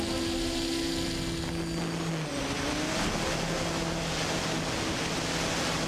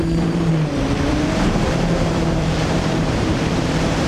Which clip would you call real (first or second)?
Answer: first